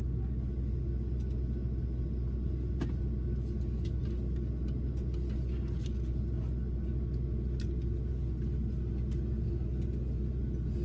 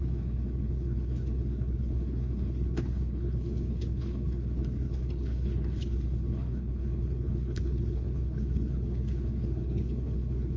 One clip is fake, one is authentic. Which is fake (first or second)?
second